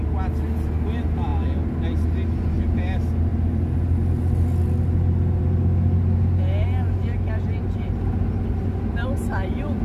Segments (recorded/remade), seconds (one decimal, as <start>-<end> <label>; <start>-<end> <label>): 0.0-9.8 recorded